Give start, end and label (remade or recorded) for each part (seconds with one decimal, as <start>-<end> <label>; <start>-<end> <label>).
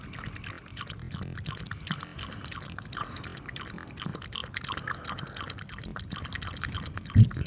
0.0-4.1 remade; 4.1-6.6 recorded; 6.6-7.5 remade